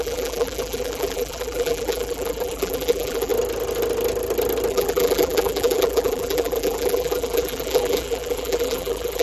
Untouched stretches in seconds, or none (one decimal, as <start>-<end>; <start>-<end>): 3.3-4.7